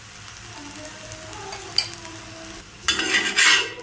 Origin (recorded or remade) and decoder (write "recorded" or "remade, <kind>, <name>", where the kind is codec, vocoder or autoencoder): recorded